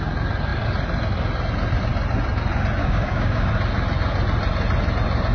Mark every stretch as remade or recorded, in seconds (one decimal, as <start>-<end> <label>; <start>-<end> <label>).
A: 0.0-2.8 recorded; 2.8-3.5 remade; 3.5-5.3 recorded